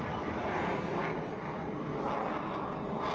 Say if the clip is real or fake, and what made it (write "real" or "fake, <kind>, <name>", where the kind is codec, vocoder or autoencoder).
real